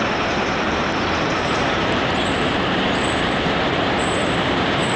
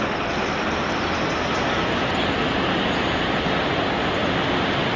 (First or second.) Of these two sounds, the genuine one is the second